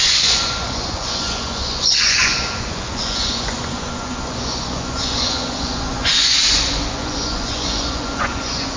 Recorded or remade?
remade